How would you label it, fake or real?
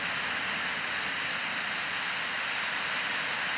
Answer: real